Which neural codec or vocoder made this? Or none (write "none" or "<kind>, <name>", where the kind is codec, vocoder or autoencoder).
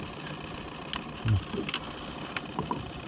none